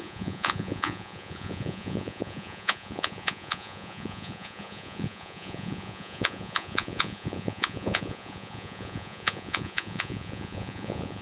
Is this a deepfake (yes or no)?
yes